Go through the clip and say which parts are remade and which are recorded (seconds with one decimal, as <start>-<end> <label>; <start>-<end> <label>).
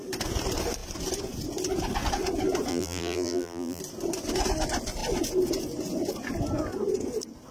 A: 0.0-2.7 recorded; 2.7-3.8 remade; 3.8-7.5 recorded